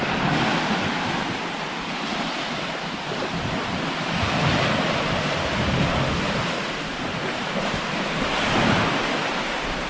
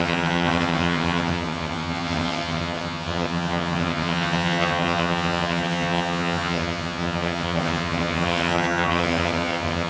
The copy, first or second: second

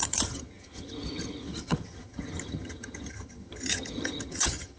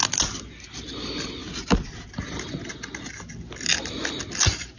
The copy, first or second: first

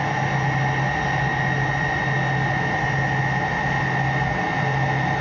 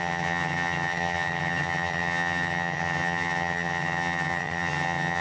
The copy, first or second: second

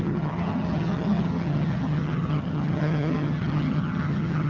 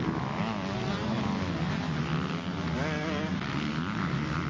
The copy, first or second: first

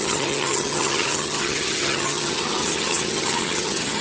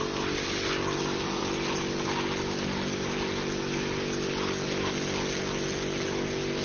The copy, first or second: first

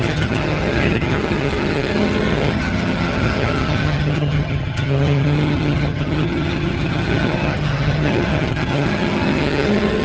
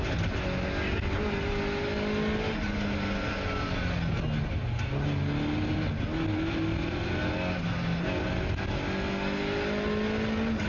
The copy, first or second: first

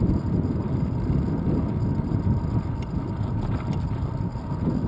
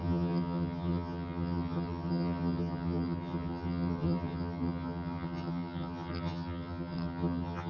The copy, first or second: second